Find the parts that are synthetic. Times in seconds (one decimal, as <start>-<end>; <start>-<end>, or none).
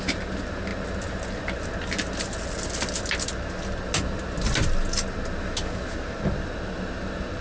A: none